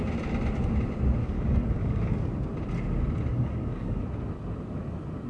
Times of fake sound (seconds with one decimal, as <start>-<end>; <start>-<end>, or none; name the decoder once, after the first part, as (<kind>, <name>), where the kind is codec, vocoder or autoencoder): 1.2-2.3 (codec, DAC); 3.3-4.0